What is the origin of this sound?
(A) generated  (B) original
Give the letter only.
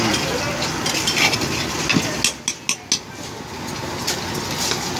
B